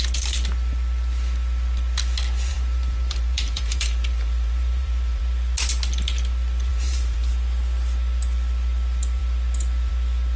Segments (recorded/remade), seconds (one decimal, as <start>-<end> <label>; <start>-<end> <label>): 0.0-2.5 recorded; 2.5-5.2 remade; 5.2-6.7 recorded; 6.7-7.3 remade; 7.3-10.4 recorded

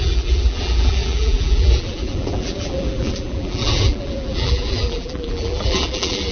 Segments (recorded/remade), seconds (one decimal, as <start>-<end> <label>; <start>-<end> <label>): 0.0-6.3 remade

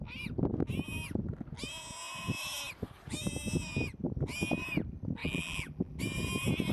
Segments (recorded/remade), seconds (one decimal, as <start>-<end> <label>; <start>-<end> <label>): 0.0-5.2 recorded; 5.2-6.0 remade; 6.0-6.7 recorded

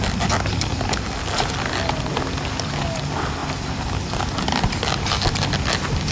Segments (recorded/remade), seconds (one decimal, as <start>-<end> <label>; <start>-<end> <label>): 0.0-6.1 recorded